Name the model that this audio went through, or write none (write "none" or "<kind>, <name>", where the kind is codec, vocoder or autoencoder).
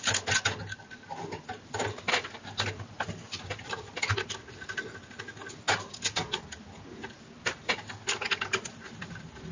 none